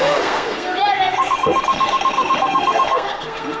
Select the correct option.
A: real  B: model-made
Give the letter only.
B